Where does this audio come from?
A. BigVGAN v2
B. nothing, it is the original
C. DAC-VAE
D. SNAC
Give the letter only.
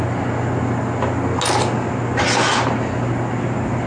B